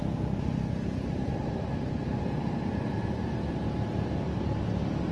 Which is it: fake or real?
real